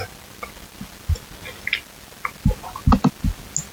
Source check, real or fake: real